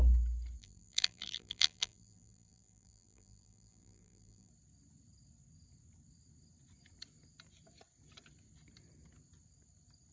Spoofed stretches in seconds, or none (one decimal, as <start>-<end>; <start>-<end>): 0.6-4.5